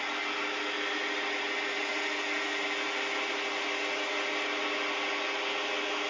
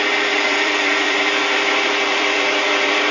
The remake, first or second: second